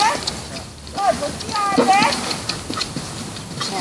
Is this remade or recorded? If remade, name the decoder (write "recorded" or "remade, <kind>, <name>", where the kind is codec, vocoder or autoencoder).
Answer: recorded